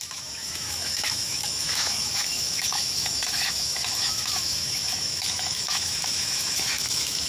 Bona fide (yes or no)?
no